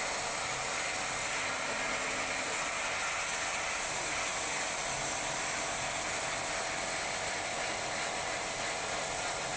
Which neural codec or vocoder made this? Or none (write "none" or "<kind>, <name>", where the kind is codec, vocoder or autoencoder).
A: none